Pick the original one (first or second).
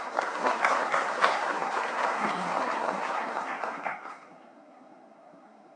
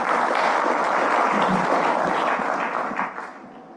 second